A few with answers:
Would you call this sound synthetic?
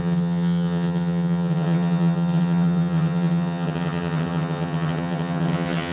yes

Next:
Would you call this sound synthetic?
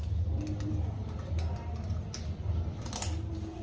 no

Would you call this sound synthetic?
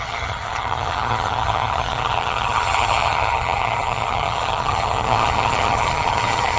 yes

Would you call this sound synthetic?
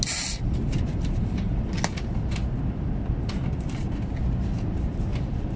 no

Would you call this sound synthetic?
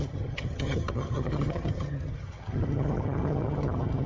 yes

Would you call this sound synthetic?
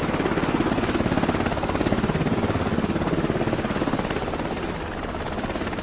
no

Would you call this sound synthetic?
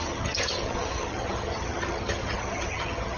yes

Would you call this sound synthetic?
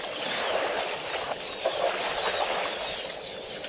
no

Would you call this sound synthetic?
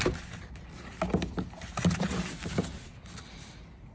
no